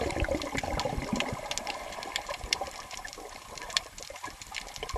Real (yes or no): yes